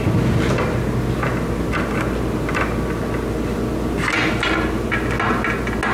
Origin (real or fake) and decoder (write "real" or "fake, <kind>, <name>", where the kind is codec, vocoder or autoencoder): real